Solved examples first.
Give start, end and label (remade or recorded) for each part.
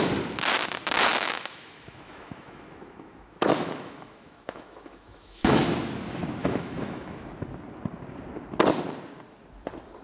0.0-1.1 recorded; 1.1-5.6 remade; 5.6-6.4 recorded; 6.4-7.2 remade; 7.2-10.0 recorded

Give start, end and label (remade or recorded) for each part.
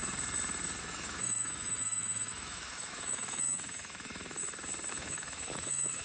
0.0-0.8 recorded; 0.8-4.4 remade; 4.4-4.9 recorded; 4.9-6.0 remade